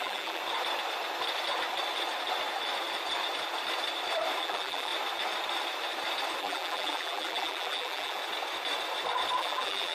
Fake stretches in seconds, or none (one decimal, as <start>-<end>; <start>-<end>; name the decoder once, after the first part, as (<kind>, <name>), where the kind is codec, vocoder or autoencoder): 0.0-0.4 (vocoder, BigVGAN v2); 4.4-4.9; 6.4-8.2; 9.4-9.9